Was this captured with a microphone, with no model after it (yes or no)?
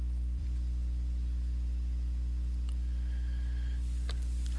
no